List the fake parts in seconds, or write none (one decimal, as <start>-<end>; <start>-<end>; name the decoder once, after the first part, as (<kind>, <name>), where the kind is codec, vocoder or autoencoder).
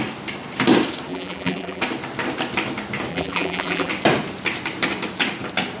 1.1-1.8 (vocoder, BigVGAN v2); 3.1-3.9